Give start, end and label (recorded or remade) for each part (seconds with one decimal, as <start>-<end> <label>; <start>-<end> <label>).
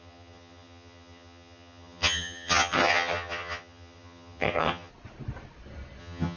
0.0-4.9 remade; 4.9-6.0 recorded; 6.0-6.4 remade